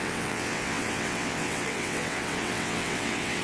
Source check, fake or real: fake